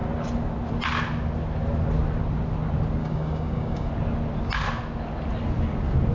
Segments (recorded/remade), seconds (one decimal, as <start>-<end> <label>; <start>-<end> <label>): 0.0-3.0 recorded; 3.0-3.9 remade; 3.9-6.1 recorded

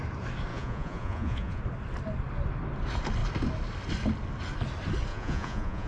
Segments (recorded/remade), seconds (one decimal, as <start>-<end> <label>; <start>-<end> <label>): 0.0-0.5 recorded; 0.5-1.6 remade; 1.6-5.1 recorded; 5.1-5.9 remade

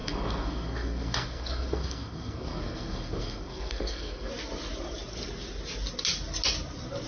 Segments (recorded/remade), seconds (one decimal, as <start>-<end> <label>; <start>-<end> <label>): 0.0-4.3 remade; 4.3-7.1 recorded